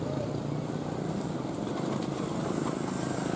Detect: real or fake real